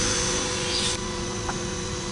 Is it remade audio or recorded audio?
remade